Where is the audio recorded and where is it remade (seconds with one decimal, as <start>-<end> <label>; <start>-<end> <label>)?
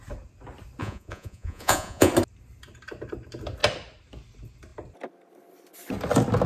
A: 0.0-0.8 recorded; 0.8-2.1 remade; 2.1-6.5 recorded